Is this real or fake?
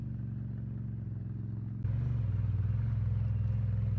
real